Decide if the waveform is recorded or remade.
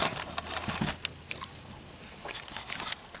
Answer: recorded